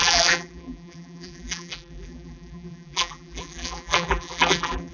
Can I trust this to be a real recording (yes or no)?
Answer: no